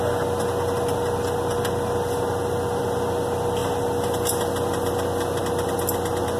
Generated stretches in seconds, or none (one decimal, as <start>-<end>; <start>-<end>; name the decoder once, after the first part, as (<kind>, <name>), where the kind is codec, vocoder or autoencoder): none